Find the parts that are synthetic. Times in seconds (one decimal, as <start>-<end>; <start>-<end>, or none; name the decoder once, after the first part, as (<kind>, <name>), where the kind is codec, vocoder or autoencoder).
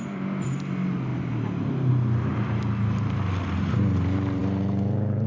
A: none